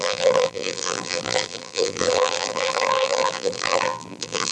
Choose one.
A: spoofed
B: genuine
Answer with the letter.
A